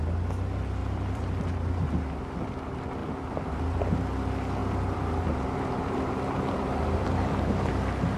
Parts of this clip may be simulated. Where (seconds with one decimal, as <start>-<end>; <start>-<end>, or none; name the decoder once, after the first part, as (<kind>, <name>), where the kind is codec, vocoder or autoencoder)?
0.8-1.9 (vocoder, BigVGAN v2); 3.0-3.8; 4.6-7.7